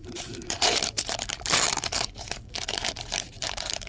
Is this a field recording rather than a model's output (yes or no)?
no